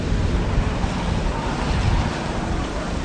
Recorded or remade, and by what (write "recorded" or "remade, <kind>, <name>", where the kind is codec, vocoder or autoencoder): recorded